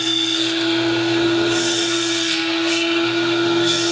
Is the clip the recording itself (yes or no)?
no